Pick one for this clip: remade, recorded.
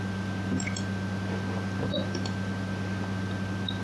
recorded